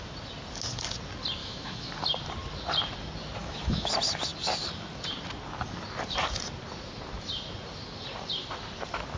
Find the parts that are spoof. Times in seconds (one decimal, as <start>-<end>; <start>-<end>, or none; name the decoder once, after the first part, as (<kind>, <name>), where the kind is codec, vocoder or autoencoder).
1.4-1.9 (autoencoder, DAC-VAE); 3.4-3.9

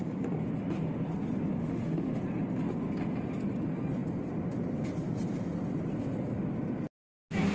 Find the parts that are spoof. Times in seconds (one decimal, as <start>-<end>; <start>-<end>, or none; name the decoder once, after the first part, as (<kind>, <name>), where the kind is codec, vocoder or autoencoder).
1.6-2.2 (autoencoder, DAC-VAE)

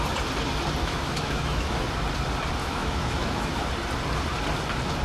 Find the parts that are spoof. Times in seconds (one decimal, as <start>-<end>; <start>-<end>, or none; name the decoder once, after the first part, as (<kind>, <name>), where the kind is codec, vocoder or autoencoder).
0.8-1.9 (autoencoder, DAC-VAE); 2.6-3.6

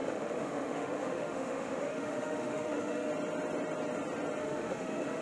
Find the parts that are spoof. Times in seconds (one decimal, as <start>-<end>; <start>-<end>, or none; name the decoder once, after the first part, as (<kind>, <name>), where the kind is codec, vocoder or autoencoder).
0.0-3.1 (autoencoder, DAC-VAE); 4.4-5.2

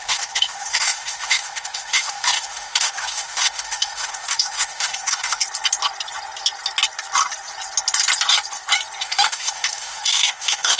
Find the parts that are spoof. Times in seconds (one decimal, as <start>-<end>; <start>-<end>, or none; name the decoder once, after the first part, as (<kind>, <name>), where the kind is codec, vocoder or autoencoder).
0.0-5.4 (autoencoder, DAC-VAE); 9.0-10.8

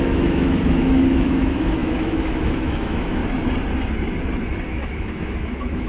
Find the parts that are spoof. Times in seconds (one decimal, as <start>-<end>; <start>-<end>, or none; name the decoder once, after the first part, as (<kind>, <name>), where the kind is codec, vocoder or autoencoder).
0.0-3.2 (autoencoder, DAC-VAE); 4.7-5.9